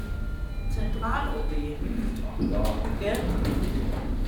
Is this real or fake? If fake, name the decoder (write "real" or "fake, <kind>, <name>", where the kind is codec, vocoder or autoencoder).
real